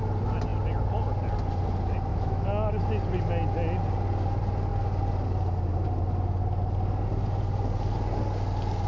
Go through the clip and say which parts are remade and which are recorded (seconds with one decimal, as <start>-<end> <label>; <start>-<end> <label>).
0.0-2.1 recorded; 2.1-2.7 remade; 2.7-8.9 recorded